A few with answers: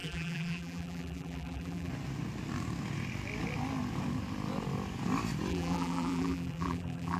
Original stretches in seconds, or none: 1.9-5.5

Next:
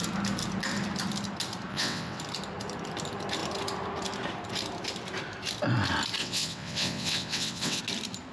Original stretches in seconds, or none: 0.0-1.7; 2.2-6.2; 7.8-8.3

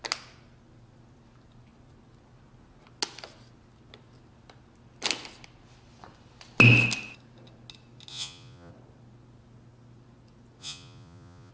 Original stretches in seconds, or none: 0.0-8.1; 8.7-10.6

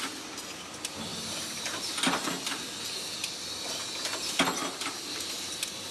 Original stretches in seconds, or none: 0.0-4.6; 5.5-5.9

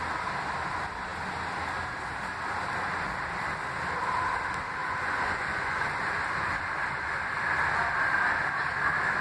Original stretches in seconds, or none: 0.0-4.8; 6.2-9.2

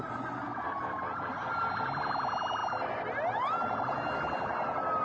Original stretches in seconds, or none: 0.0-5.0